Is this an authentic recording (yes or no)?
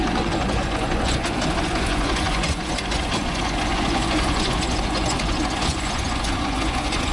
no